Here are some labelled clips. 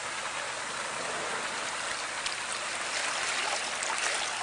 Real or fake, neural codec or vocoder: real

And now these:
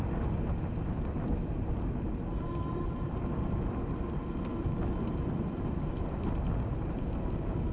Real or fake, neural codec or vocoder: real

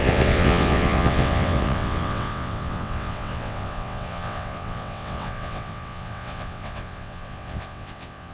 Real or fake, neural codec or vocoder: fake, vocoder, WaveNeXt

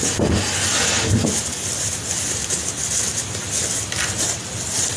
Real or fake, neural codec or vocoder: real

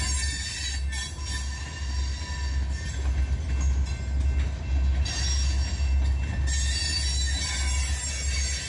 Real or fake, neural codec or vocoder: real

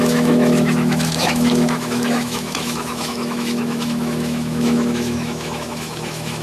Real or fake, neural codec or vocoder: fake, autoencoder, DAC-VAE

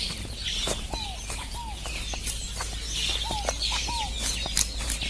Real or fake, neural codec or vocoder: real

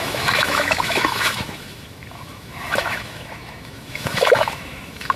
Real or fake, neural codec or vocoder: fake, autoencoder, DAC-VAE